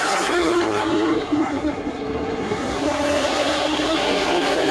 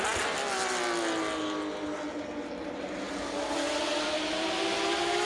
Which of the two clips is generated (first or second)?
first